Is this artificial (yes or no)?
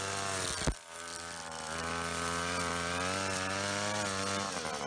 no